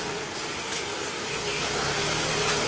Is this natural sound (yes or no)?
yes